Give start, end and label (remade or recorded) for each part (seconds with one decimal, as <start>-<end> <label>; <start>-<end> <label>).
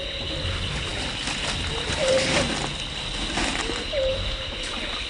0.0-3.5 recorded; 3.5-4.6 remade; 4.6-5.1 recorded